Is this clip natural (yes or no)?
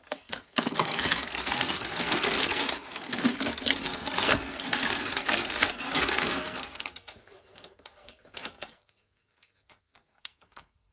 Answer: no